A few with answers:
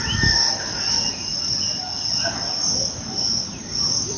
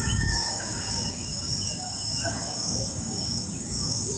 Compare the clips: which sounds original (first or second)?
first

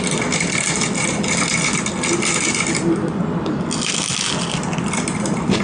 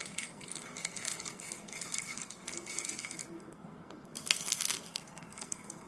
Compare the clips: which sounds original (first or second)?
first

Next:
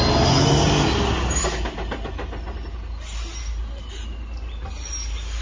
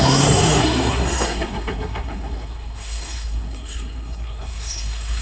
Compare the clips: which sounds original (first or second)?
first